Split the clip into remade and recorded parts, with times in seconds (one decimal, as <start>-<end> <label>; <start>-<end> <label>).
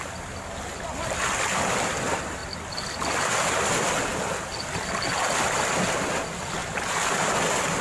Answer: 0.0-6.6 remade; 6.6-7.8 recorded